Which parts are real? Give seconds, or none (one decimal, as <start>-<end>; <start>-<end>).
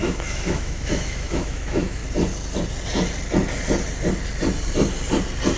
2.0-5.6